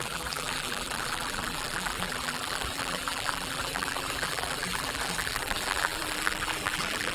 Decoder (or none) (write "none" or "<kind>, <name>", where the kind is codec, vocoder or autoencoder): vocoder, BigVGAN v2